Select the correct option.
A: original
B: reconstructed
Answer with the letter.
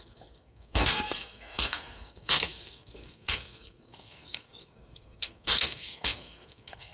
B